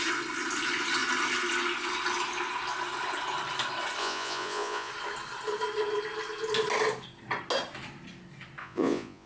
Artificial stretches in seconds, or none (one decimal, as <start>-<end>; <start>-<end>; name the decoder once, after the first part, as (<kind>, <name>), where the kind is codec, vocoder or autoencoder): 4.0-4.9 (vocoder, Vocos); 8.6-9.3